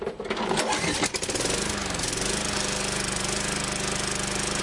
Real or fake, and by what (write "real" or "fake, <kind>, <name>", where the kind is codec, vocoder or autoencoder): real